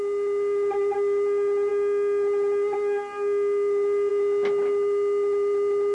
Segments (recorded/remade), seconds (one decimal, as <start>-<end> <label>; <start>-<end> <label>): 0.0-5.9 recorded

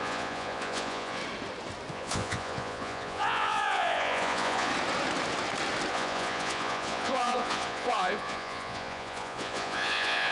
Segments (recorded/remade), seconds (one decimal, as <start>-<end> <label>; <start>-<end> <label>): 0.0-1.2 remade; 1.2-1.9 recorded; 1.9-4.7 remade; 4.7-5.9 recorded; 5.9-10.3 remade

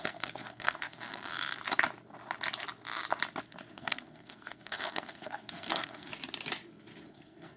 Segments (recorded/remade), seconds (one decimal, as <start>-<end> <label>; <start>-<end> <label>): 0.0-1.3 remade; 1.3-3.7 recorded; 3.7-6.1 remade; 6.1-7.1 recorded; 7.1-7.6 remade

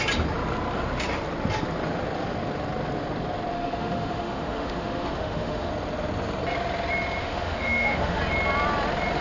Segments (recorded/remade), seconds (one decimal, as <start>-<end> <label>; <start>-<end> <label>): 0.0-3.5 recorded; 3.5-5.7 remade; 5.7-7.2 recorded; 7.2-8.2 remade; 8.2-9.2 recorded

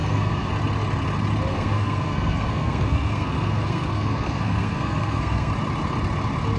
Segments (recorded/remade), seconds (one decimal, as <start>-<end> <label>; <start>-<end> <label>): 0.0-0.5 remade; 0.5-1.5 recorded; 1.5-5.5 remade; 5.5-6.6 recorded

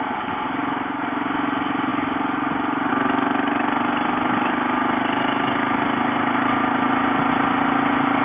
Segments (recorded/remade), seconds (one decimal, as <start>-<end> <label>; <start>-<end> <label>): 0.0-8.2 recorded

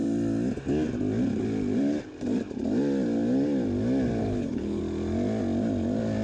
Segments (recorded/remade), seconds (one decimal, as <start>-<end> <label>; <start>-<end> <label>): 0.0-4.2 recorded; 4.2-4.8 remade; 4.8-6.2 recorded